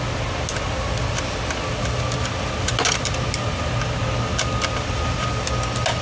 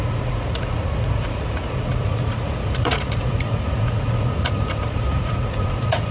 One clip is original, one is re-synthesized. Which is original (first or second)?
first